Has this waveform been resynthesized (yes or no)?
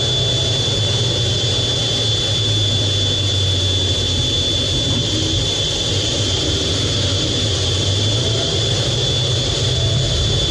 no